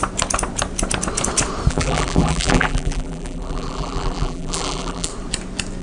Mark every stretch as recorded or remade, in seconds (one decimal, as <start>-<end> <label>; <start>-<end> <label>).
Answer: 0.0-1.7 recorded; 1.7-5.1 remade; 5.1-5.8 recorded